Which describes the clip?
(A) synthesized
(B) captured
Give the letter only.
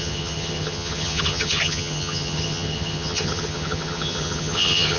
A